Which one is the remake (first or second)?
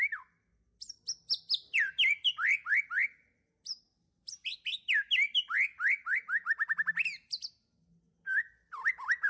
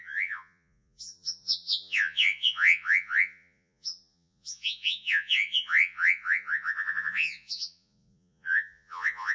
second